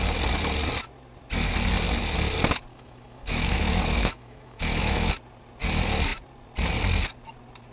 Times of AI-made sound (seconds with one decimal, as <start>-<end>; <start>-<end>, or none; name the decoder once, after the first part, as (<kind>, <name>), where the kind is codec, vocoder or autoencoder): 2.7-5.1 (autoencoder, DAC-VAE)